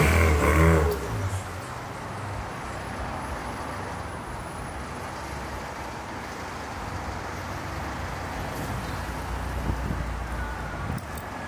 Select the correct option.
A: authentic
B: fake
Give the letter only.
A